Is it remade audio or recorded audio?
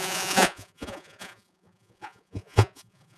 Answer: remade